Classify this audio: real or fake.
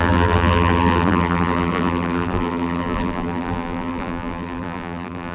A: fake